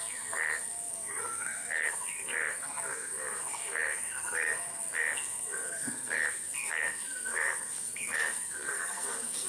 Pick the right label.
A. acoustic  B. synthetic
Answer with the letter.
B